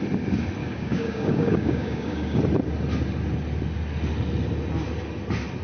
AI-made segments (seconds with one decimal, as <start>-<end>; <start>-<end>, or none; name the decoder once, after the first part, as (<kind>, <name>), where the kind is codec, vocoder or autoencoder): 0.6-2.4 (codec, DAC)